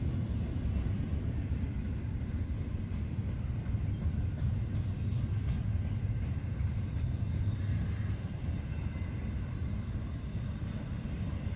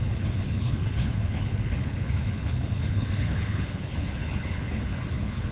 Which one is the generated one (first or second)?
second